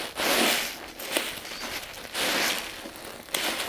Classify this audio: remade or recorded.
recorded